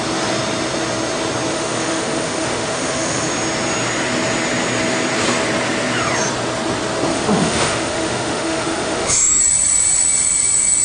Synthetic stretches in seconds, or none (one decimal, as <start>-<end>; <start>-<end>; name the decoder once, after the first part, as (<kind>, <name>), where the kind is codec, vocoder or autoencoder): 1.5-3.3 (autoencoder, DAC-VAE); 7.1-9.4